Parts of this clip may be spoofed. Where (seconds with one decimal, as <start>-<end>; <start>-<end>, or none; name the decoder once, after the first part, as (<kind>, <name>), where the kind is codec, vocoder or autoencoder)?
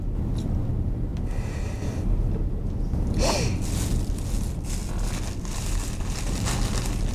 none